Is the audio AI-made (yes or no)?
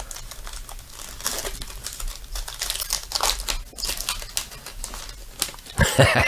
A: no